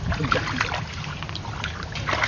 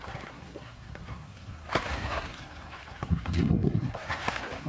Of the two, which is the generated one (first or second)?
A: second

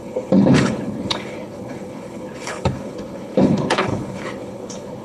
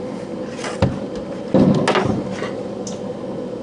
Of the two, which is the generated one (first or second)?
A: first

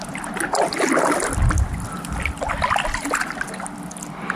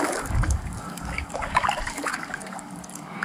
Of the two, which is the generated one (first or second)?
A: second